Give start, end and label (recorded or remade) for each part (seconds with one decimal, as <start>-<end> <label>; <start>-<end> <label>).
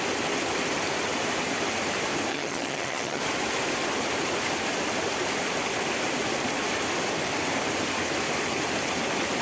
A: 0.0-2.3 recorded; 2.3-3.2 remade; 3.2-9.4 recorded